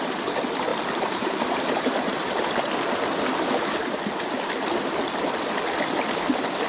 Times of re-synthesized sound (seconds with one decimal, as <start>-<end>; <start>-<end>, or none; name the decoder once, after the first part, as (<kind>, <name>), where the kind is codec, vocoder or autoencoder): 0.7-2.4 (vocoder, BigVGAN v2)